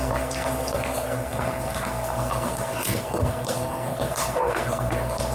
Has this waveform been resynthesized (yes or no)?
yes